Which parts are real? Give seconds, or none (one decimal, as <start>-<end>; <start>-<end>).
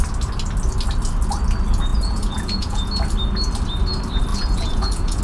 0.0-1.9; 2.9-4.3